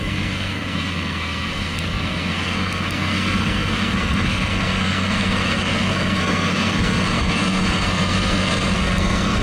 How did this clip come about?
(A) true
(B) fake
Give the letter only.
B